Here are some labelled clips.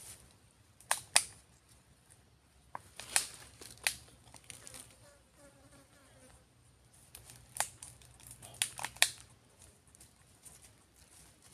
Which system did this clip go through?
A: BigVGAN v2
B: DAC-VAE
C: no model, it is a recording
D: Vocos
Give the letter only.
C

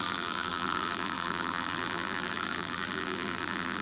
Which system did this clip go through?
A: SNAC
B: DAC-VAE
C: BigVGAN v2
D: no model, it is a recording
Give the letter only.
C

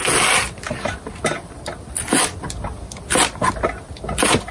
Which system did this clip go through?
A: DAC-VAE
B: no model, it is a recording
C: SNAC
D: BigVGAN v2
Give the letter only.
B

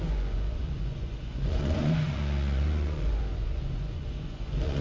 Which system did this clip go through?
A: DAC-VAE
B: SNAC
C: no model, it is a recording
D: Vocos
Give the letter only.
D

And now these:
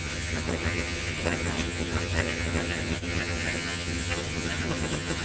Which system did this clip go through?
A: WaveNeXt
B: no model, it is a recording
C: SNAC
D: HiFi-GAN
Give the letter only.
D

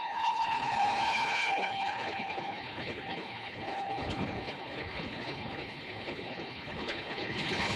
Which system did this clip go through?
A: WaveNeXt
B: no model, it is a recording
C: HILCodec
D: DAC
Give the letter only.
C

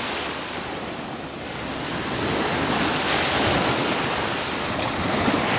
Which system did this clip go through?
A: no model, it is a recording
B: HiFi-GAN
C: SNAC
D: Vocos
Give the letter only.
A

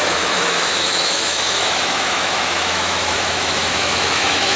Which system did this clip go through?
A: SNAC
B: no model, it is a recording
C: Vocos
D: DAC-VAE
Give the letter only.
D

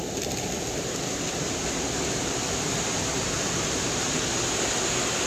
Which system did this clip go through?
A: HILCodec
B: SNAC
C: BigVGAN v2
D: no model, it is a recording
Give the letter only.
D